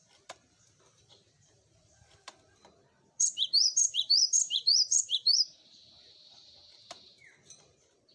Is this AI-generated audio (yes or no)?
yes